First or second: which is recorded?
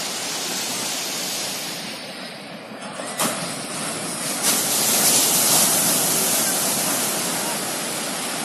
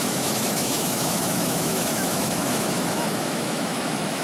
first